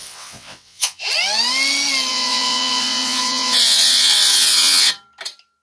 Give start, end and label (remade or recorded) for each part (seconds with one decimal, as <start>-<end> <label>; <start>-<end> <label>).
0.0-1.0 remade; 1.0-2.1 recorded; 2.1-4.9 remade; 4.9-5.6 recorded